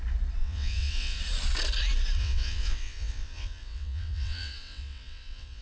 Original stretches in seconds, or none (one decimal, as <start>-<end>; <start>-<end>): 0.0-0.4; 1.2-2.2